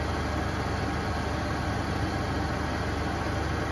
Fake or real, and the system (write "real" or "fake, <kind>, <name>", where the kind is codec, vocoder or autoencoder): real